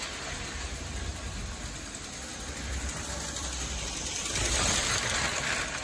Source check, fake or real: fake